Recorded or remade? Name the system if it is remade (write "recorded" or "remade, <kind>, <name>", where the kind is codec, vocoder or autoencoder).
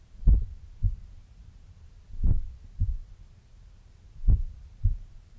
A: recorded